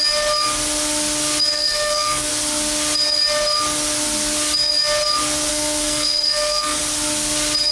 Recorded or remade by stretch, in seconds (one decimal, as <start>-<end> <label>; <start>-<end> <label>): 0.0-1.5 recorded; 1.5-2.3 remade; 2.3-5.5 recorded; 5.5-6.8 remade; 6.8-7.7 recorded